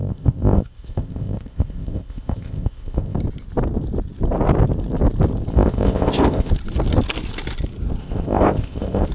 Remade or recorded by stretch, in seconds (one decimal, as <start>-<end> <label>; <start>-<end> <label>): 0.0-3.2 remade; 3.2-5.5 recorded; 5.5-6.5 remade; 6.5-8.0 recorded; 8.0-9.1 remade